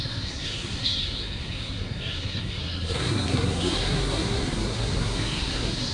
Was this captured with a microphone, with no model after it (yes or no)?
no